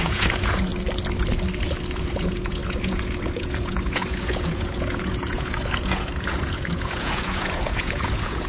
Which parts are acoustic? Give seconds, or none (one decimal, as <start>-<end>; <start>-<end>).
0.7-2.0